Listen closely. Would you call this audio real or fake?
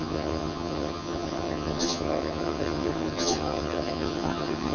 fake